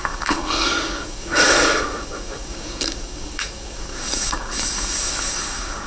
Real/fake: fake